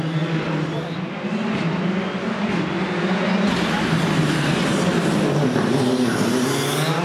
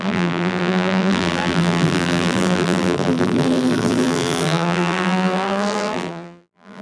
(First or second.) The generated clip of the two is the second